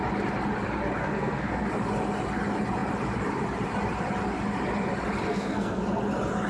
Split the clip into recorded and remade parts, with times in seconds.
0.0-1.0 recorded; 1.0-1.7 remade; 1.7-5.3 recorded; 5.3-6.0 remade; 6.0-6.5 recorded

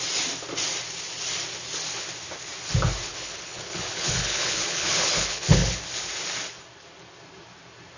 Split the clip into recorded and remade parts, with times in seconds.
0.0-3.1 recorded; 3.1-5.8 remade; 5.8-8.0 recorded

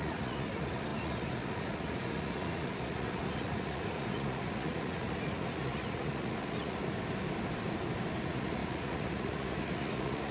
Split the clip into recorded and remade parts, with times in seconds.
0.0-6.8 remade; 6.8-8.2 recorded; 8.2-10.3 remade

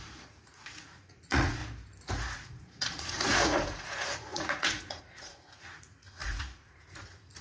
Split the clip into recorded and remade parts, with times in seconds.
0.0-1.6 remade; 1.6-2.1 recorded; 2.1-7.4 remade

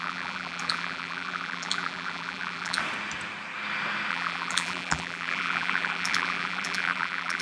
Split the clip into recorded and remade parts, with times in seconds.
0.0-2.8 remade; 2.8-4.1 recorded; 4.1-7.4 remade

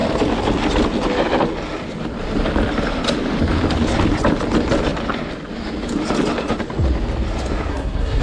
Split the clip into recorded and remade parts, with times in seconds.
0.0-7.7 recorded; 7.7-8.2 remade

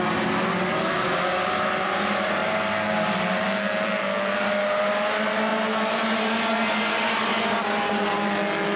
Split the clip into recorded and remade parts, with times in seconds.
0.0-8.8 recorded

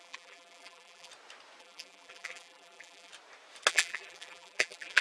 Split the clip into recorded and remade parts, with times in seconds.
0.0-1.1 remade; 1.1-1.6 recorded; 1.6-3.1 remade; 3.1-3.7 recorded; 3.7-5.0 remade